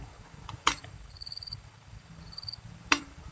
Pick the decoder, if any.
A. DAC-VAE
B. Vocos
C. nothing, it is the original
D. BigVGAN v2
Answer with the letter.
D